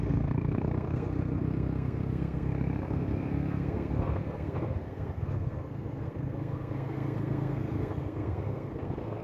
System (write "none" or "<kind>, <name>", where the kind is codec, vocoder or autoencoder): codec, SNAC